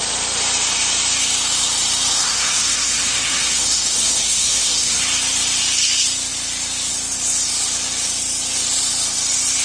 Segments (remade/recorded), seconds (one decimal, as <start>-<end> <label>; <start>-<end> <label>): 0.0-2.1 recorded; 2.1-5.0 remade; 5.0-9.6 recorded